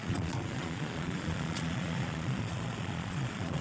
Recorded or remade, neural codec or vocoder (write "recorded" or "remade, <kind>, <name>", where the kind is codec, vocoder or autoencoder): remade, vocoder, Vocos